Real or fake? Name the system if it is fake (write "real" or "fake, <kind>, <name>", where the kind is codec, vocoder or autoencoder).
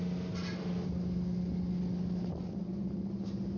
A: real